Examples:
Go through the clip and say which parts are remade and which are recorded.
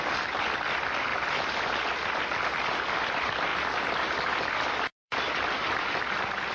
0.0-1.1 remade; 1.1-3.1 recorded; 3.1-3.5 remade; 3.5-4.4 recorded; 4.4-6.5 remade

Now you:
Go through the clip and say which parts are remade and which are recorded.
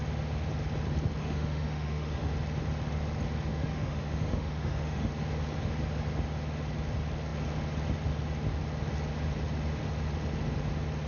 0.0-1.2 recorded; 1.2-2.3 remade; 2.3-3.5 recorded; 3.5-5.1 remade; 5.1-11.1 recorded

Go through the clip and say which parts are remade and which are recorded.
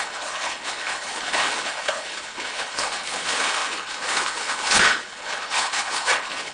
0.0-6.5 remade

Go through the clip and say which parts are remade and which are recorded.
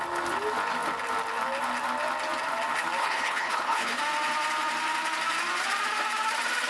0.0-3.0 recorded; 3.0-4.0 remade; 4.0-6.7 recorded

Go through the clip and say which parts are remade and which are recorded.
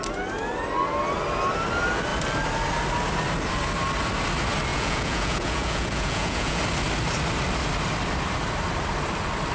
0.0-4.7 recorded; 4.7-6.6 remade; 6.6-9.5 recorded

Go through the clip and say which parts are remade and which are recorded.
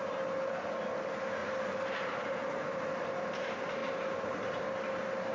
0.0-1.4 recorded; 1.4-2.9 remade; 2.9-3.8 recorded; 3.8-4.7 remade; 4.7-5.3 recorded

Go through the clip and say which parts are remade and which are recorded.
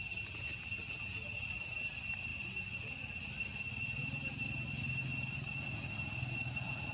0.0-4.0 recorded; 4.0-4.8 remade; 4.8-6.9 recorded